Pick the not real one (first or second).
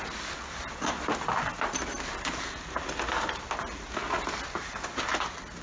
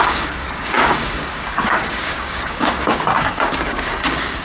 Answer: second